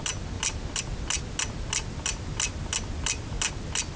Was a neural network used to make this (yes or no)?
no